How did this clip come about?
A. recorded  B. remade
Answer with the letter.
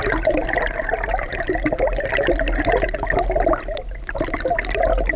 A